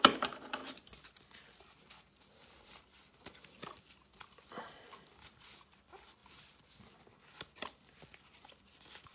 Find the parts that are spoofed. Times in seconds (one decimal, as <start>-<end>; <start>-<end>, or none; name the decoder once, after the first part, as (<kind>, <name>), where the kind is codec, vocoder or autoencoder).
4.0-4.5 (vocoder, BigVGAN v2)